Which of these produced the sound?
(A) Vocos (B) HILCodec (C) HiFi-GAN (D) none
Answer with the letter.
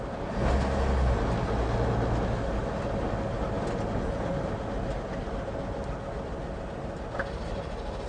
D